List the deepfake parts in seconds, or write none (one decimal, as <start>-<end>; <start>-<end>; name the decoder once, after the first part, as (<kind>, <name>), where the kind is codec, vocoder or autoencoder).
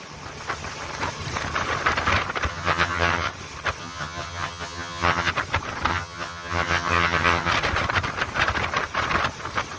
2.5-3.3 (vocoder, HiFi-GAN); 3.8-5.3; 5.9-7.5